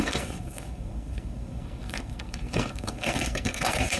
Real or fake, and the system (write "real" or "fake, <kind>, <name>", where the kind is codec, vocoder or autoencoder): fake, codec, SNAC